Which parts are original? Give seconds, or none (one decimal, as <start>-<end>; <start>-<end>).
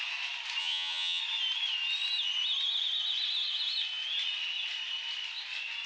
0.0-0.6; 1.2-5.9